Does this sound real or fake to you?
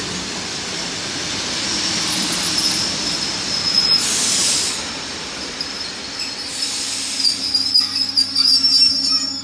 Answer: real